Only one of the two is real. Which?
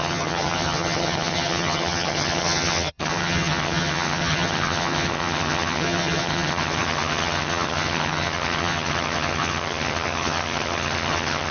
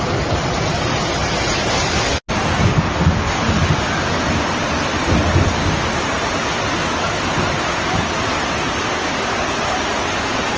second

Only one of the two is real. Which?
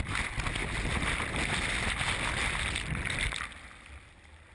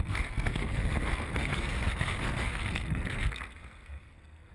first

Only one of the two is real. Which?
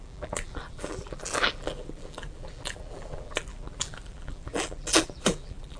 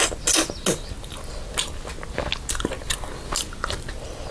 second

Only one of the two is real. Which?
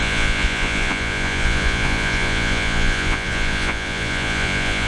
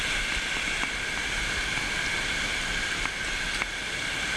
second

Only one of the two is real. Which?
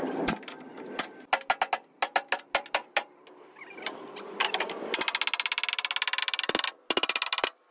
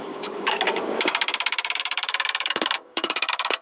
first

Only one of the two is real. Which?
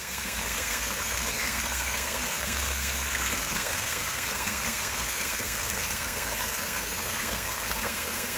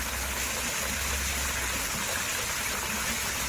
second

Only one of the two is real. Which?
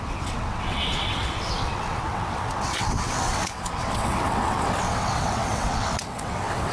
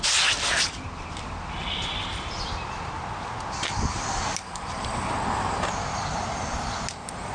second